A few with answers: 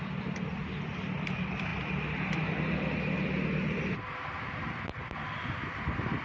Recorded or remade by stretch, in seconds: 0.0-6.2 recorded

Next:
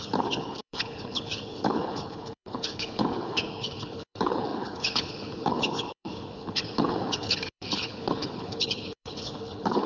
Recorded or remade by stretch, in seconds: 0.0-9.9 remade

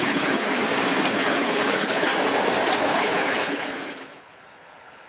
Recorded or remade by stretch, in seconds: 0.0-0.6 remade; 0.6-1.1 recorded; 1.1-2.1 remade; 2.1-2.8 recorded; 2.8-5.1 remade

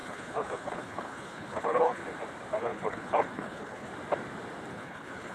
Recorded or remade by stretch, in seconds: 0.0-2.0 remade; 2.0-2.6 recorded; 2.6-3.9 remade; 3.9-4.7 recorded; 4.7-5.3 remade

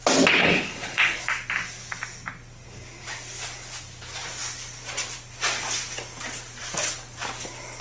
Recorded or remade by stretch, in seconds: 0.0-0.4 recorded; 0.4-1.2 remade; 1.2-7.8 recorded

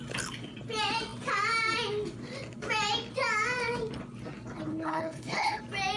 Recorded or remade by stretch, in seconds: 0.0-4.7 recorded; 4.7-5.6 remade; 5.6-6.0 recorded

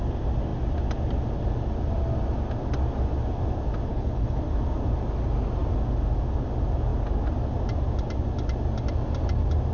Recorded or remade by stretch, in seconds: 0.0-3.9 recorded; 3.9-4.4 remade; 4.4-9.7 recorded

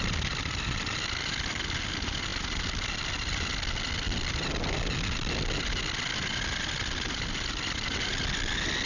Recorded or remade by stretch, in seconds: 0.0-8.9 recorded